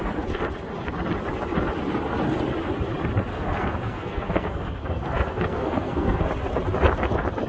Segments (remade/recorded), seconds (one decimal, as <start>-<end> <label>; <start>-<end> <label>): 0.0-3.3 recorded; 3.3-6.3 remade; 6.3-7.5 recorded